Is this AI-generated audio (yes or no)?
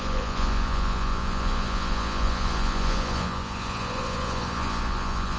yes